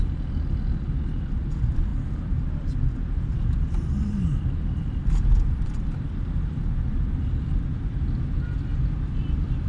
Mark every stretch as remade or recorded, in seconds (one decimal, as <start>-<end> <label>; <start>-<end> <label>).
0.0-9.7 recorded